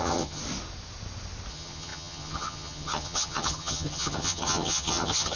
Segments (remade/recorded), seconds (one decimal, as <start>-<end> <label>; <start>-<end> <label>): 0.0-0.4 remade; 0.4-1.5 recorded; 1.5-5.4 remade